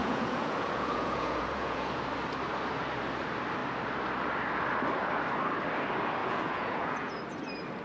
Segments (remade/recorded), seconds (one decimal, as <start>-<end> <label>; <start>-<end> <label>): 0.0-2.0 remade; 2.0-6.2 recorded; 6.2-7.2 remade; 7.2-7.8 recorded